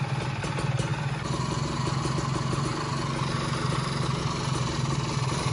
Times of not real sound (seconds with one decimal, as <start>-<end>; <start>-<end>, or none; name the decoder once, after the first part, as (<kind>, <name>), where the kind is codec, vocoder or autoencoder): none